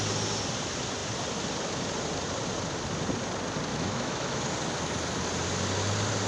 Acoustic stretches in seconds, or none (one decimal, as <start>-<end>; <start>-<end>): 0.0-3.7; 4.4-6.3